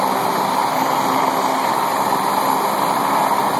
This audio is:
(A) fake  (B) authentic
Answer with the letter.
B